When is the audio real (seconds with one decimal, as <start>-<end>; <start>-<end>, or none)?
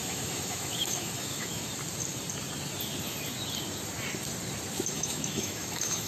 1.7-4.9